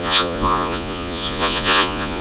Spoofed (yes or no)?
yes